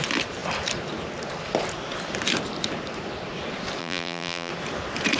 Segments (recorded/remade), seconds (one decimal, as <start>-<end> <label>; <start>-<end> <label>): 0.0-3.8 recorded; 3.8-4.5 remade; 4.5-5.2 recorded